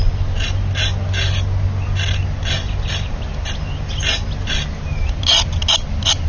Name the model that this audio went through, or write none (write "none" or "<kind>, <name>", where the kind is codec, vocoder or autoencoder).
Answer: none